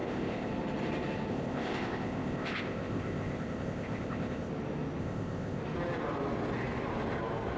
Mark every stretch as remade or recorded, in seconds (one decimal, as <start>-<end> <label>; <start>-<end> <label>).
0.0-0.5 remade; 0.5-1.3 recorded; 1.3-4.5 remade; 4.5-5.0 recorded; 5.0-5.6 remade; 5.6-7.6 recorded